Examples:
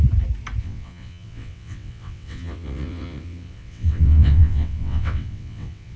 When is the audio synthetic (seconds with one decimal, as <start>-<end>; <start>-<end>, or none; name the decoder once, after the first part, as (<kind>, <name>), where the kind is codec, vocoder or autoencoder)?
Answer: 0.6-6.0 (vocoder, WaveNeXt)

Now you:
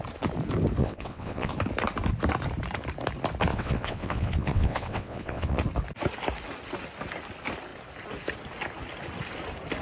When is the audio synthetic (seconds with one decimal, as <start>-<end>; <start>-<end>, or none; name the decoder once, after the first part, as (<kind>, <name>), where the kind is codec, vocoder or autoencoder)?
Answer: 0.8-1.5 (vocoder, WaveNeXt); 3.5-5.6

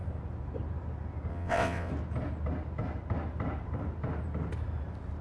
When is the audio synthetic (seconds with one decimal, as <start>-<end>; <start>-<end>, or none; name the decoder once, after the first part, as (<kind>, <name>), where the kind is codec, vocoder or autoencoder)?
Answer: 1.3-1.9 (vocoder, WaveNeXt)

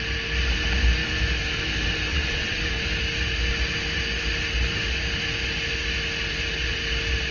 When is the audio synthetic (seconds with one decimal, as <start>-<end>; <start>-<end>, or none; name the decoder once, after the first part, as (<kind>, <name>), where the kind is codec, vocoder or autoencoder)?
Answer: 2.1-2.6 (vocoder, WaveNeXt)